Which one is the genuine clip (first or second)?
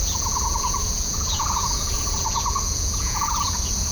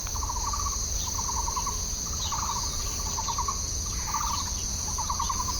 second